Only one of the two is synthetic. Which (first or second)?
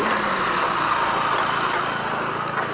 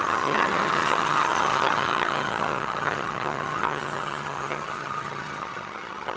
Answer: second